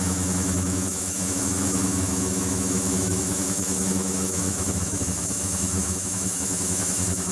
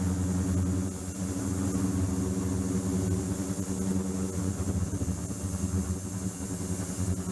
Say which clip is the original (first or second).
second